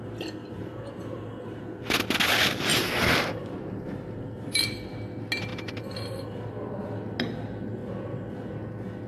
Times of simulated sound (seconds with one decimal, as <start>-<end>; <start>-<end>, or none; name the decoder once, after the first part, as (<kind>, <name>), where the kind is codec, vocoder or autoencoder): 0.4-0.9 (vocoder, BigVGAN v2); 2.7-4.6